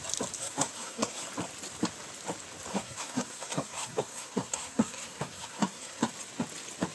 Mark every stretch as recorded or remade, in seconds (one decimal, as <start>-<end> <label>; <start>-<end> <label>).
0.0-0.4 recorded; 0.4-1.2 remade; 1.2-2.7 recorded; 2.7-6.1 remade; 6.1-6.9 recorded